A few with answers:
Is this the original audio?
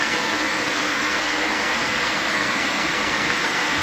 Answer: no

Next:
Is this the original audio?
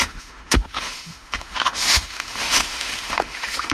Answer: no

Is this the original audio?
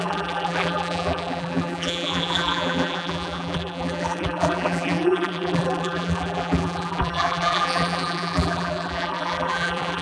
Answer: no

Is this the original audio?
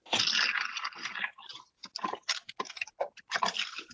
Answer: yes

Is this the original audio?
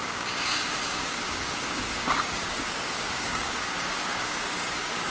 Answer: no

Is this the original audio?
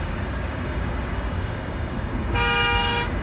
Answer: no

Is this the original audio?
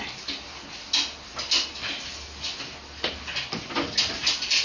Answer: yes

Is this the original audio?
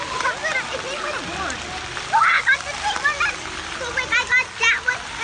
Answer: yes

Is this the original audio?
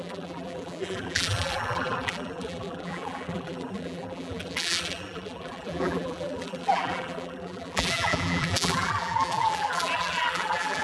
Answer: no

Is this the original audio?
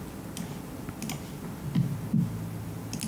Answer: yes